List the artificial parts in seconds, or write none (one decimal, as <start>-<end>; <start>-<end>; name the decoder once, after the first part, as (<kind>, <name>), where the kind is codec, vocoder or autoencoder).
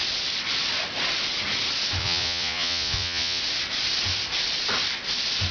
2.0-3.4 (vocoder, Vocos)